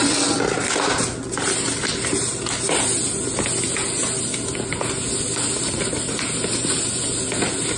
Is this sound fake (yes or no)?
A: no